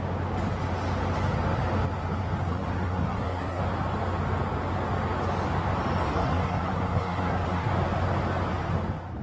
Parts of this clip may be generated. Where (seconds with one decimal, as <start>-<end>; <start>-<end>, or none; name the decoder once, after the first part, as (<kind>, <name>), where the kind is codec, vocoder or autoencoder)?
2.5-3.6 (codec, SNAC); 6.1-7.7